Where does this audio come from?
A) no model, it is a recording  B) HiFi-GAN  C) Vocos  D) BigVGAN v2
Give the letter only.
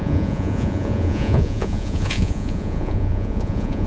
C